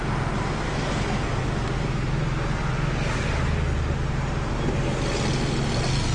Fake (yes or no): no